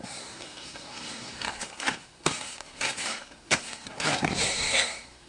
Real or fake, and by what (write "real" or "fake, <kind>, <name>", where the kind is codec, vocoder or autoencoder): fake, codec, SNAC